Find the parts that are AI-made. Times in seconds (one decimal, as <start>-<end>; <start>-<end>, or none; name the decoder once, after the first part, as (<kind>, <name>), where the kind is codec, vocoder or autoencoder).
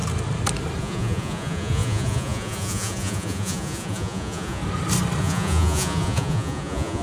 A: 0.8-4.6 (vocoder, Vocos); 5.2-7.0